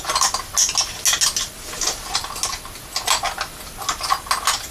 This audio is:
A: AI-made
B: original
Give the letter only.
B